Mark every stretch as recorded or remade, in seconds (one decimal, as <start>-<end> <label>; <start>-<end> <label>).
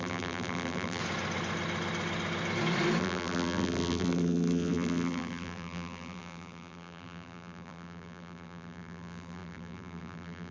0.0-1.0 remade; 1.0-3.0 recorded; 3.0-10.5 remade